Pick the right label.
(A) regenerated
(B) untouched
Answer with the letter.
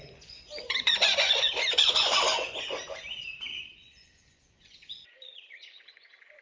A